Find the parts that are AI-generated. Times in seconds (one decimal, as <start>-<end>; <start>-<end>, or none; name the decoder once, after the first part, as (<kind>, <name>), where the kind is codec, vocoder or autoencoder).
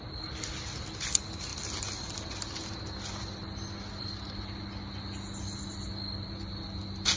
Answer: none